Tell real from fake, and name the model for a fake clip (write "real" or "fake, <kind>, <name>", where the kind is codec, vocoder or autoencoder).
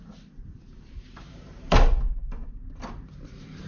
fake, vocoder, BigVGAN v2